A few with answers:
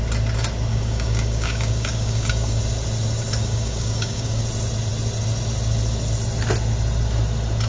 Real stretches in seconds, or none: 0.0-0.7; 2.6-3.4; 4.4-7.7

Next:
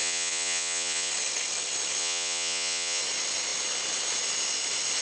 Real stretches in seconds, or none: 1.1-2.0; 3.0-5.0

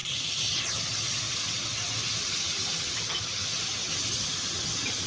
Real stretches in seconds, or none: 0.0-5.1

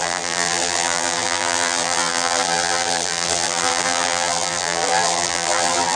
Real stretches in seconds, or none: none

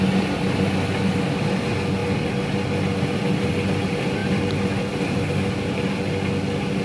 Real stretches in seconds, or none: 0.0-6.8

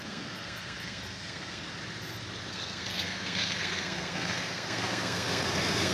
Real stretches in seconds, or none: 1.6-2.5